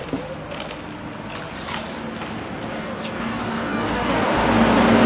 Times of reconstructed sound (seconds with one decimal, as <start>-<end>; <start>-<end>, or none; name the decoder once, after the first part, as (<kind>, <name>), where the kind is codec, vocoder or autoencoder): 2.7-4.4 (codec, DAC)